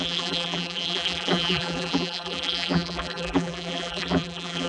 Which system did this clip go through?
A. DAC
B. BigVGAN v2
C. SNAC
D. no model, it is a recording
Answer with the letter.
B